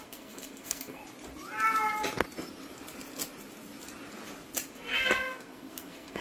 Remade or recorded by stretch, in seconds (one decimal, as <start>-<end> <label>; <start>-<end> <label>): 0.0-1.0 remade; 1.0-4.7 recorded; 4.7-6.2 remade